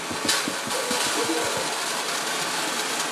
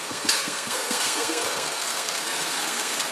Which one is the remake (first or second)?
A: second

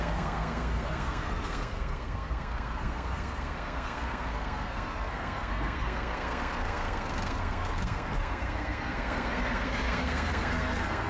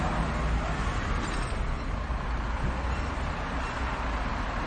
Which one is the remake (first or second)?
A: first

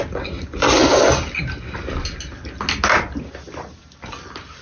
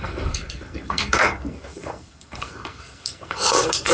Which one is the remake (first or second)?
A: second